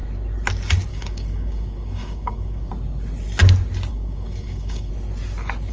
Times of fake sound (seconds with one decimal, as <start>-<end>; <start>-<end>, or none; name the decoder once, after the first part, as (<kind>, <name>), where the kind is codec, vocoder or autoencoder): 0.9-2.7 (codec, DAC); 3.9-4.9